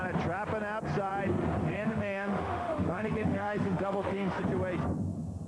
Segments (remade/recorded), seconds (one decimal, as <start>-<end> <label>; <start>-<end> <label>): 0.0-1.6 recorded; 1.6-4.4 remade; 4.4-5.5 recorded